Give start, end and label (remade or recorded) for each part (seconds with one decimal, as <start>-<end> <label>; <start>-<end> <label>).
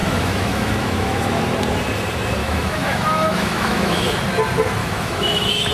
0.0-1.4 remade; 1.4-2.4 recorded; 2.4-4.2 remade; 4.2-4.8 recorded; 4.8-5.7 remade